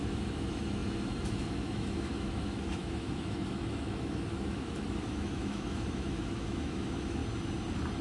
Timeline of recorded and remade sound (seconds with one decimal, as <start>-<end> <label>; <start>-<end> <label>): 0.0-7.2 remade; 7.2-8.0 recorded